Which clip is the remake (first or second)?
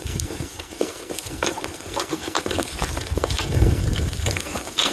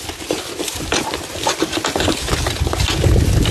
first